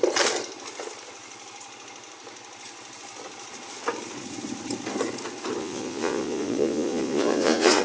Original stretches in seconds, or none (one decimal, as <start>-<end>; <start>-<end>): 0.0-5.6